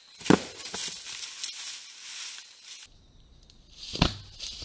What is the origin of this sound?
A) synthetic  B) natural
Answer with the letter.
B